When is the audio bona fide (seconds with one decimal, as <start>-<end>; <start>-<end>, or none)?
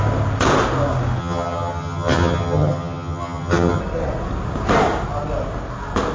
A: 0.0-1.2; 3.8-6.1